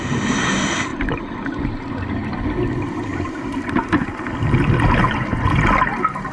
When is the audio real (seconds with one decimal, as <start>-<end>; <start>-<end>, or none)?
0.0-6.3